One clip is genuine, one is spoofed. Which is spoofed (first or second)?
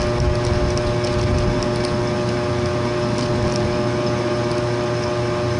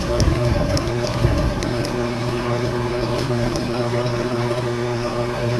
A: second